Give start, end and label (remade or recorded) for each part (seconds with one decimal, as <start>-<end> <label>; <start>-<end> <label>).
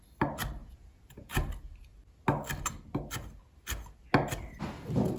0.0-0.6 recorded; 0.6-1.4 remade; 1.4-5.2 recorded